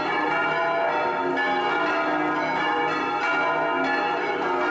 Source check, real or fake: real